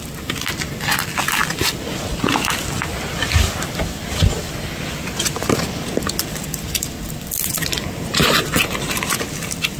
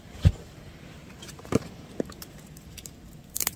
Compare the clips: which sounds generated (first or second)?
second